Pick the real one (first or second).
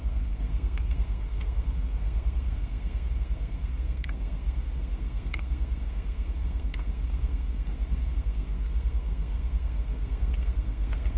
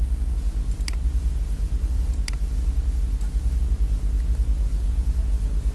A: second